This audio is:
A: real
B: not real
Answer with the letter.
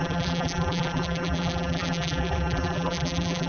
B